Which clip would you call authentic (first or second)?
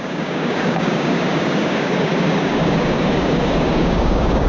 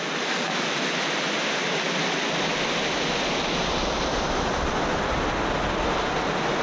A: second